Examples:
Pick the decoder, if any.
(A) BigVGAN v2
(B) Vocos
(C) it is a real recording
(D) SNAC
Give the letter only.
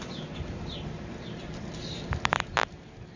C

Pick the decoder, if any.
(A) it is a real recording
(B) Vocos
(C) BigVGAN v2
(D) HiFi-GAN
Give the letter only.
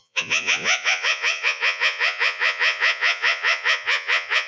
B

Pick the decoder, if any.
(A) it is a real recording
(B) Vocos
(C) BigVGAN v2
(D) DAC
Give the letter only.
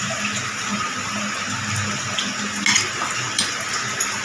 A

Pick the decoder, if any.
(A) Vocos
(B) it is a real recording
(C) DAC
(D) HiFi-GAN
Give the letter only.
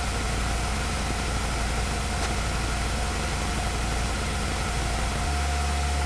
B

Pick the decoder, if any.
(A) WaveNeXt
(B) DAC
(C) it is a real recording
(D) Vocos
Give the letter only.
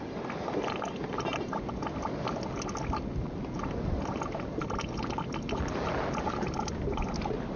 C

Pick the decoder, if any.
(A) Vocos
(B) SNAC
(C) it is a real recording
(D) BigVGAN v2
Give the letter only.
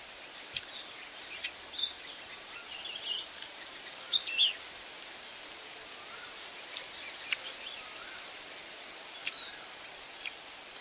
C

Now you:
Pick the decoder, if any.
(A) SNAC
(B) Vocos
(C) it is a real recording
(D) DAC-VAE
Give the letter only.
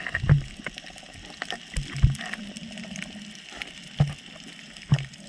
C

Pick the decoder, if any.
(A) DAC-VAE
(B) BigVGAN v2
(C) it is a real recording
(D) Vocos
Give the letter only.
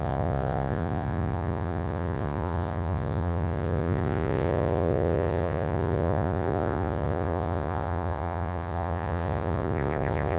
D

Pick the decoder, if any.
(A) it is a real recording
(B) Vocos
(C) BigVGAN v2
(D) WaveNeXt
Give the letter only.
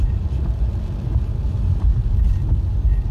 A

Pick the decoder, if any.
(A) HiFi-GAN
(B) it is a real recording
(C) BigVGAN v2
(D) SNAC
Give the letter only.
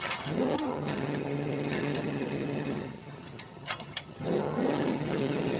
A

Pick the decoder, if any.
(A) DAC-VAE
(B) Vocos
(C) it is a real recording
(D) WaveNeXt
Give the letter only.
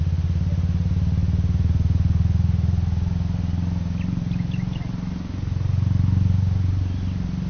C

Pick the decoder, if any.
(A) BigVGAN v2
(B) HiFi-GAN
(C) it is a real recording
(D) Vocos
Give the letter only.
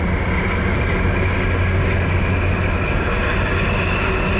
C